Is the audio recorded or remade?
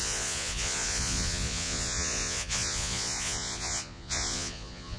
remade